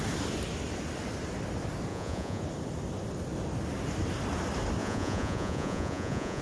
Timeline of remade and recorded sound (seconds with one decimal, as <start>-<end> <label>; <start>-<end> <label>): 0.0-1.9 recorded; 1.9-2.4 remade; 2.4-4.8 recorded; 4.8-6.4 remade